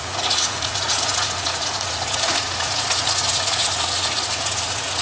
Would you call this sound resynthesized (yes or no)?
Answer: yes